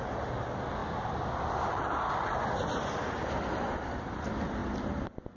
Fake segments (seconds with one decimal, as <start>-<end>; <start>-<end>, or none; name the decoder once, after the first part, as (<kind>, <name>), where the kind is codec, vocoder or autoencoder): none